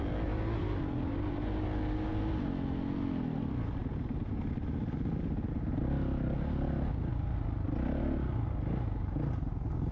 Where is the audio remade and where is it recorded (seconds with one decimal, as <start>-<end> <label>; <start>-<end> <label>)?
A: 0.0-9.9 recorded